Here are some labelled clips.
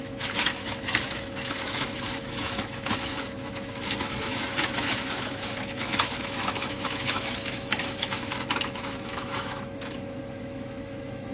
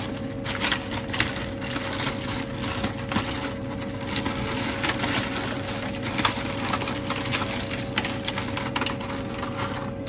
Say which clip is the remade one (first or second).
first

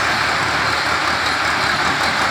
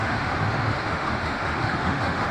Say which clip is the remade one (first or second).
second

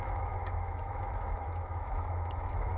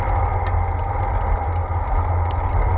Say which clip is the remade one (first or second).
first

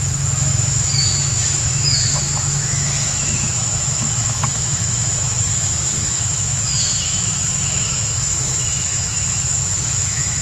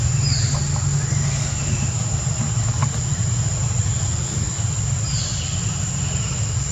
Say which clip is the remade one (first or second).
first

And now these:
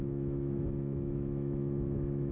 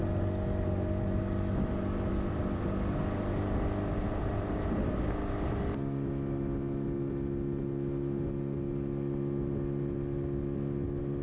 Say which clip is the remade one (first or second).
first